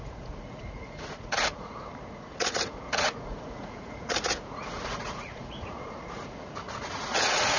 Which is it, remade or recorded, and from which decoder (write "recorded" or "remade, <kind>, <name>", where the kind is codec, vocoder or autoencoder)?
remade, vocoder, Vocos